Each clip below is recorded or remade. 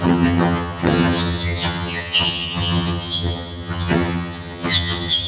remade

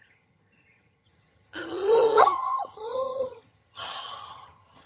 remade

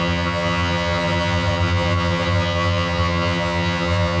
remade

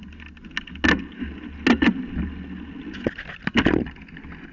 recorded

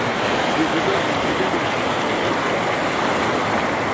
recorded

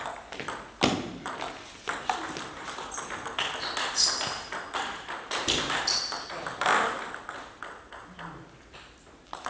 recorded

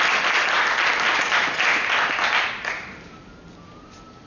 recorded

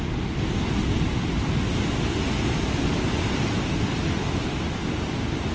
recorded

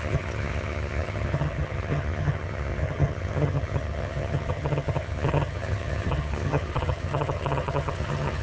remade